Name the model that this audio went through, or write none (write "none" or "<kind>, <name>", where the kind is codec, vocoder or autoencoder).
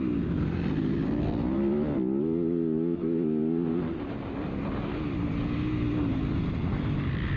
none